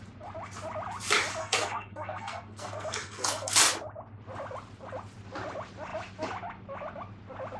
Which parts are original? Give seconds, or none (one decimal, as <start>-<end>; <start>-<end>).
0.0-1.4; 3.6-7.6